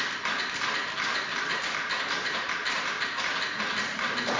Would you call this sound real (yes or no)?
yes